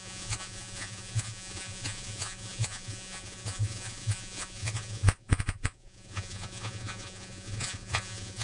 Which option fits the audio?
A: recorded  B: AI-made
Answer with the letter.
B